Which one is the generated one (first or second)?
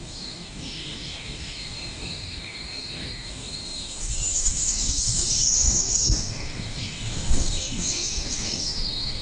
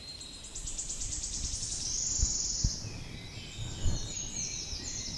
first